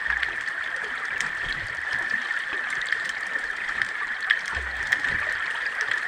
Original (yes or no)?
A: no